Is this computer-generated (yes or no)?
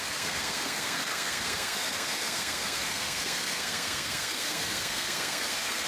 yes